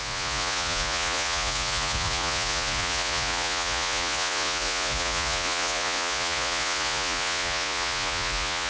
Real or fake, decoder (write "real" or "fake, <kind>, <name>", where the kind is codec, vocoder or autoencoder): fake, vocoder, Vocos